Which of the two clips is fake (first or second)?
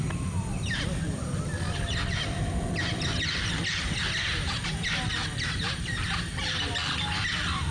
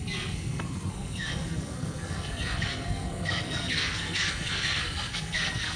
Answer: second